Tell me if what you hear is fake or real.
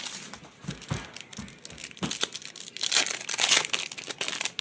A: real